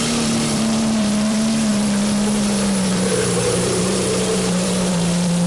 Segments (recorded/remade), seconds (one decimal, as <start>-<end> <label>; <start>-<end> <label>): 0.0-5.5 remade